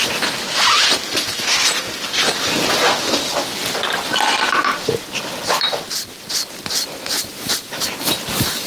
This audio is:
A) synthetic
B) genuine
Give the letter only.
B